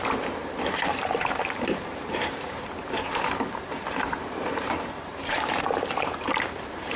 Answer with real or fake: fake